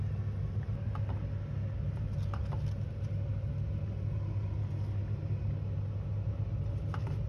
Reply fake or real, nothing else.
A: real